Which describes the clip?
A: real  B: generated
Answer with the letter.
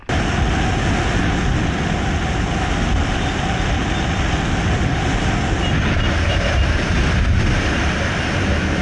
A